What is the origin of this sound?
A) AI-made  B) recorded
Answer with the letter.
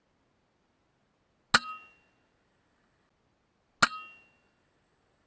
B